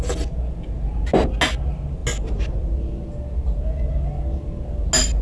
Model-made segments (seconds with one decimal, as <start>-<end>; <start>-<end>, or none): none